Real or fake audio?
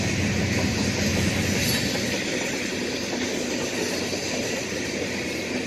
real